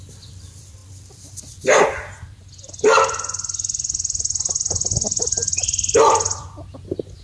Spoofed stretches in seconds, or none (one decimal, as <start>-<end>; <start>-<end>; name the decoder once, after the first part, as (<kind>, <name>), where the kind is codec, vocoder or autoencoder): none